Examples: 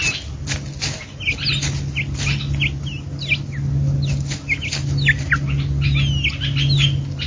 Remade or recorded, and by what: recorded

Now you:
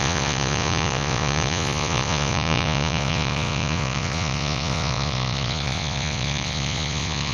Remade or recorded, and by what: remade, vocoder, Vocos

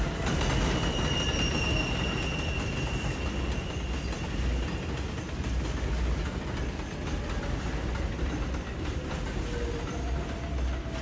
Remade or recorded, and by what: recorded